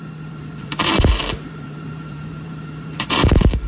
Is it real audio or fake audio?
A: fake